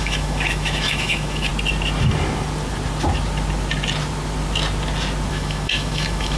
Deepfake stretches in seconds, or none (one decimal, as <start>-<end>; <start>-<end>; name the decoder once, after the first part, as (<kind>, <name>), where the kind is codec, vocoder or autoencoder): 0.0-1.5 (autoencoder, DAC-VAE); 5.3-6.4